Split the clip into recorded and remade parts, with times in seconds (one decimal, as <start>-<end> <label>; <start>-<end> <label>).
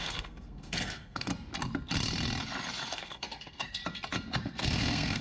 0.0-1.3 remade; 1.3-2.9 recorded; 2.9-3.8 remade; 3.8-4.4 recorded; 4.4-5.2 remade